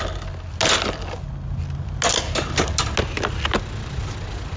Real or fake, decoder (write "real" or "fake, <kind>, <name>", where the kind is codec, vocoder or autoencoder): real